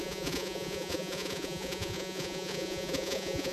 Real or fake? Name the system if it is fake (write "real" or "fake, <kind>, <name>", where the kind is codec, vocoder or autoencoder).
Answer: fake, vocoder, Vocos